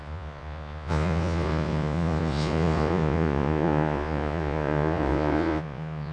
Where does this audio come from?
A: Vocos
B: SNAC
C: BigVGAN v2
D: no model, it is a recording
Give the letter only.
A